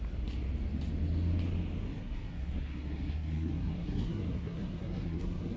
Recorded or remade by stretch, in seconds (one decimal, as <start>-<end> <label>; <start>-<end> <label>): 0.0-2.0 recorded; 2.0-5.6 remade